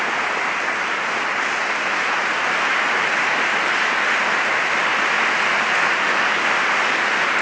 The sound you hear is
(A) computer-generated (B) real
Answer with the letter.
B